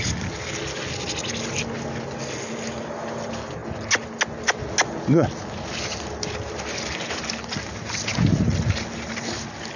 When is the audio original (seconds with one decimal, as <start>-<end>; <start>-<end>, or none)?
0.0-9.8